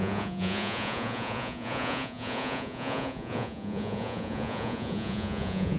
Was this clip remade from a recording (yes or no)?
yes